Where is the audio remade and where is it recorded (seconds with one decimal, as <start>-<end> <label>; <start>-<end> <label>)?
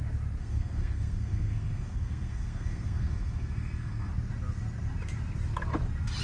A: 0.0-0.4 recorded; 0.4-4.1 remade; 4.1-6.2 recorded